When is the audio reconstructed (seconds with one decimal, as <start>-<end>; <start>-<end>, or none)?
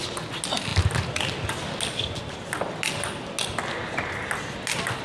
none